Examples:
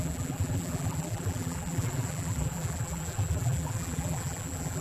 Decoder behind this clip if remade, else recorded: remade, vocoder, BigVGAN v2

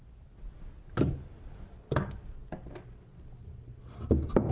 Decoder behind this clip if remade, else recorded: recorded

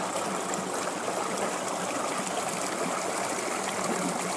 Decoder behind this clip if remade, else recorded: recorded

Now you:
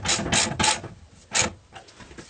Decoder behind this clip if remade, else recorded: recorded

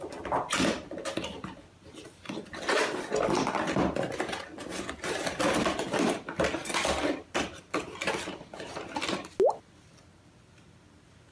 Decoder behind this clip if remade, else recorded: recorded